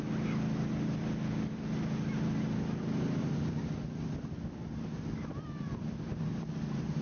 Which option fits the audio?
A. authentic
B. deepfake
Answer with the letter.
A